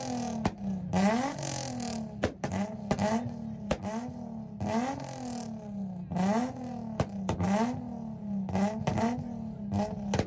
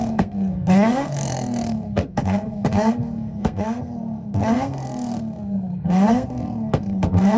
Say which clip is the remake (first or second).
second